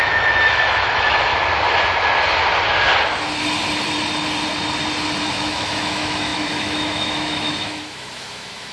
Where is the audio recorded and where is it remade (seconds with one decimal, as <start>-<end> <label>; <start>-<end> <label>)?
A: 0.0-1.3 remade; 1.3-5.2 recorded; 5.2-8.7 remade

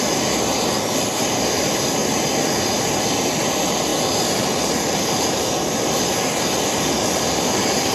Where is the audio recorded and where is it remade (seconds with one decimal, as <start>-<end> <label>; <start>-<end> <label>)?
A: 0.0-7.9 recorded